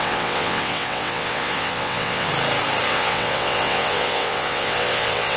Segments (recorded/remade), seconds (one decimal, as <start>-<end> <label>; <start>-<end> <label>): 0.0-2.3 remade; 2.3-2.9 recorded; 2.9-5.4 remade